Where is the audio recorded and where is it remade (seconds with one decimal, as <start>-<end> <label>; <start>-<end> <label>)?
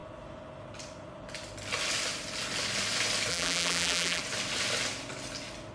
0.0-3.3 recorded; 3.3-4.2 remade; 4.2-5.7 recorded